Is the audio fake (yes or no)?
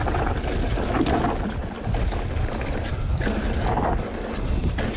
no